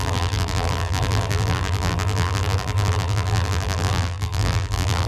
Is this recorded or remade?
remade